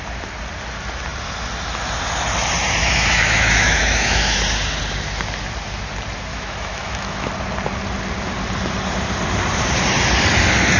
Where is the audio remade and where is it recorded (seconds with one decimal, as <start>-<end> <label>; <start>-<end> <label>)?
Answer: 0.0-2.8 recorded; 2.8-4.4 remade; 4.4-6.3 recorded; 6.3-7.3 remade; 7.3-10.8 recorded